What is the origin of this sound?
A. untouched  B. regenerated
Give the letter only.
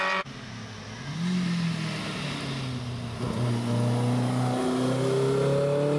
A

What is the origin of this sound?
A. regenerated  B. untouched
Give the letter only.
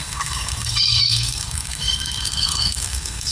A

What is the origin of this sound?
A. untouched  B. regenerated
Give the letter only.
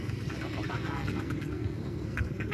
B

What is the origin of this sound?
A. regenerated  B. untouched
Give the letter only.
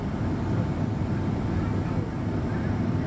B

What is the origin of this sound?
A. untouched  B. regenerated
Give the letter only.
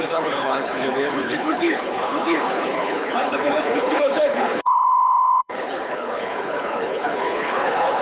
B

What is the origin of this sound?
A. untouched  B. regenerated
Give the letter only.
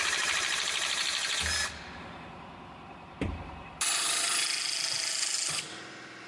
B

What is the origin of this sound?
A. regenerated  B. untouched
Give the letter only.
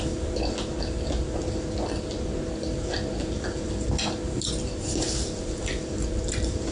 B